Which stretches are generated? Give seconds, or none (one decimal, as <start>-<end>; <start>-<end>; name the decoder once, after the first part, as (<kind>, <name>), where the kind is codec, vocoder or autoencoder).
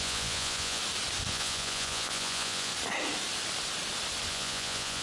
0.0-0.8 (vocoder, Vocos); 1.3-2.7; 4.3-5.0